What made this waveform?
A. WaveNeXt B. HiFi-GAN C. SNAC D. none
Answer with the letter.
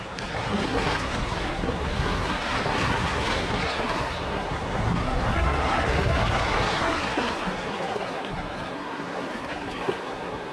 C